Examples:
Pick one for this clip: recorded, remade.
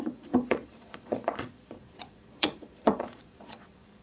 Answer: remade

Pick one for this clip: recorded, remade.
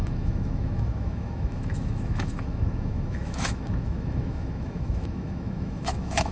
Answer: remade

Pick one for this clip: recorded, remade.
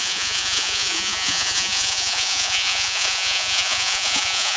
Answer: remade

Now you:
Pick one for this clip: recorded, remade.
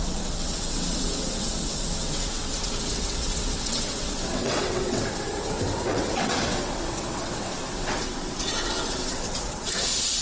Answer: remade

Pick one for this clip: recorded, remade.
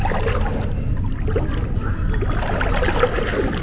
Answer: recorded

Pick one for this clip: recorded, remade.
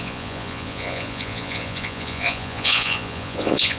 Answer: remade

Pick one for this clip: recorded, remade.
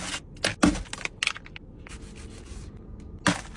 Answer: recorded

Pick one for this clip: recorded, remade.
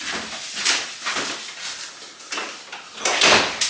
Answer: recorded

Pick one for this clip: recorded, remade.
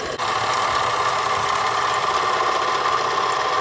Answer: recorded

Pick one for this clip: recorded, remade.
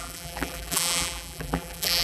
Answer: remade